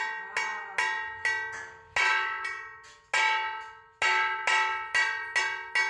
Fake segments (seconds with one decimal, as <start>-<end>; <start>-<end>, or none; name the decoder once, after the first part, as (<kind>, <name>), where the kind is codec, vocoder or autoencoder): none